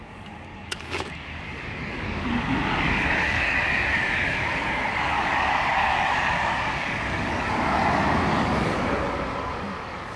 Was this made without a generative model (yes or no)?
no